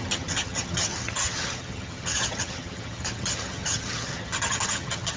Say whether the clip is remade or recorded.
remade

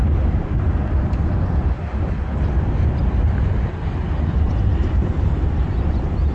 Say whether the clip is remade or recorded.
recorded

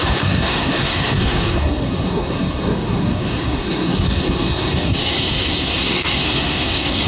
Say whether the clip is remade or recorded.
remade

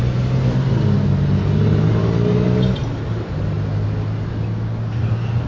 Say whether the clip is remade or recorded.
recorded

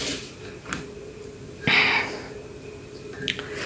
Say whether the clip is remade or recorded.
recorded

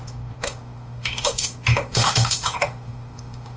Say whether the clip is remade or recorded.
remade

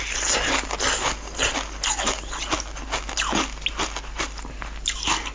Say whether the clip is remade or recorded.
recorded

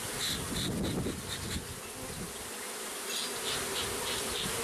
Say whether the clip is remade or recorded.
recorded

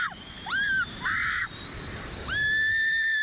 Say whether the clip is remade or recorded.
remade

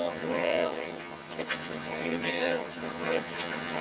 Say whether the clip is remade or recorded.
remade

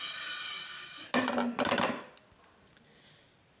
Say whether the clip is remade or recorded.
recorded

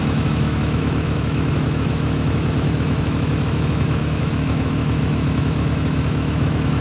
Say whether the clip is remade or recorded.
remade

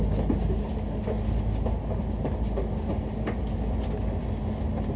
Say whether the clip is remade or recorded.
recorded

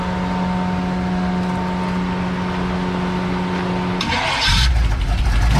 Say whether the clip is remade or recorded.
recorded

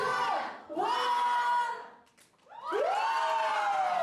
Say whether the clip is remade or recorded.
recorded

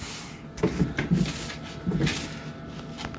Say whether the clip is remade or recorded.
recorded